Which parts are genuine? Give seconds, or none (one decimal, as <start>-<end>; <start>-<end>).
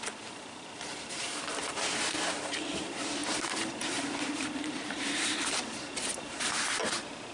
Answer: none